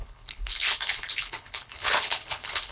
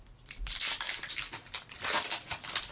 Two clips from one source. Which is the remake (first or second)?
first